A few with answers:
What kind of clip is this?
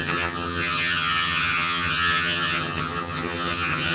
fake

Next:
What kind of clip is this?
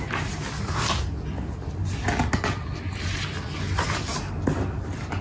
real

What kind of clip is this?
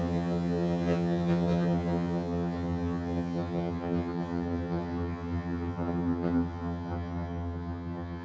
fake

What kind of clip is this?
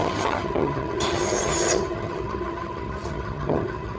fake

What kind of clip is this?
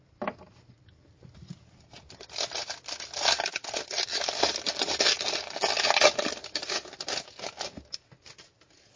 real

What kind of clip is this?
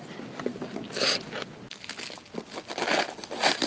real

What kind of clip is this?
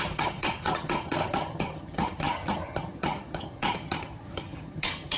fake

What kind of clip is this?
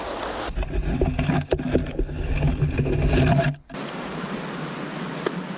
real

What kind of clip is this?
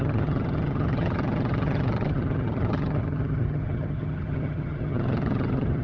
fake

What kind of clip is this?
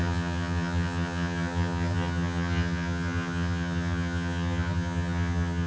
fake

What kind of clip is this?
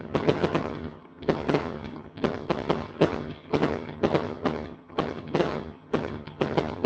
fake